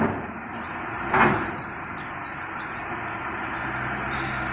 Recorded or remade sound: recorded